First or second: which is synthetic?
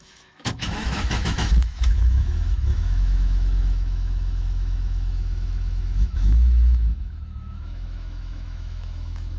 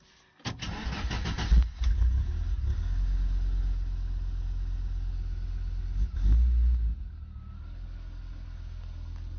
first